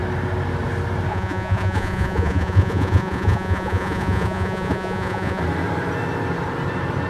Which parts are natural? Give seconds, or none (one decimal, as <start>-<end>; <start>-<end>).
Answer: 0.0-1.1; 5.4-7.1